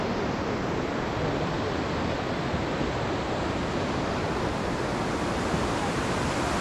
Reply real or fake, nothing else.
real